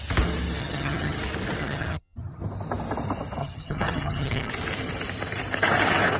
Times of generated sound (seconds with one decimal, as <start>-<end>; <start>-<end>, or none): 0.6-1.2; 1.6-2.4; 3.4-4.5